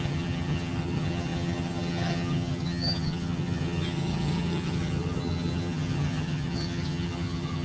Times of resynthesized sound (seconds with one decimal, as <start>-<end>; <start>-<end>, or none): 0.0-7.6